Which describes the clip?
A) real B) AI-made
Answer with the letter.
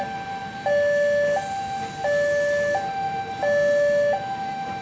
A